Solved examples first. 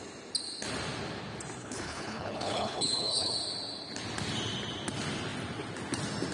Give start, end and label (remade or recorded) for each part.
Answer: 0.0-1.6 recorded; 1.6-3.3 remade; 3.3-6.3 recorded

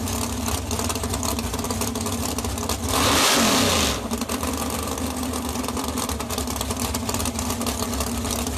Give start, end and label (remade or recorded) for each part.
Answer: 0.0-8.6 recorded